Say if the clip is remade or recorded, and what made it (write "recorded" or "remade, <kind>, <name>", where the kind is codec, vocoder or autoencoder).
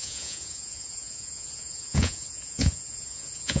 remade, vocoder, Vocos